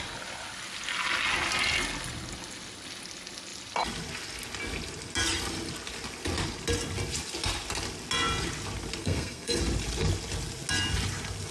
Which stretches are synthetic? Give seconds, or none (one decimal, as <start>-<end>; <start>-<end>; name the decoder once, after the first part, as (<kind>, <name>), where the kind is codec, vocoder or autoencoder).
9.0-9.6 (codec, SNAC)